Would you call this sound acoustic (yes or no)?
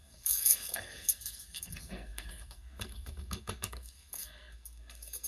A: no